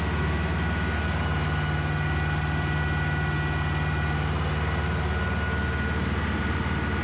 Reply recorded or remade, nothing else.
recorded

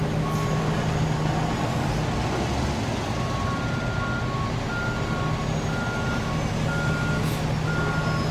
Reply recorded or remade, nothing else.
recorded